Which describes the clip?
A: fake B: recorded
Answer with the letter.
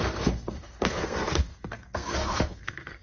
A